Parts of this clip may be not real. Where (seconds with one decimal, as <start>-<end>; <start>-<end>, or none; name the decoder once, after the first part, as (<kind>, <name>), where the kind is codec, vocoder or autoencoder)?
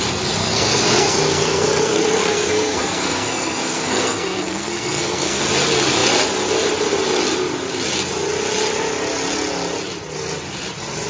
0.4-5.4 (codec, SNAC)